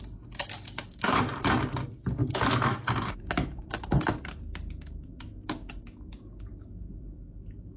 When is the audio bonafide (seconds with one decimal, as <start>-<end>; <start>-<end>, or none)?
0.0-0.5; 1.2-2.2; 6.9-7.8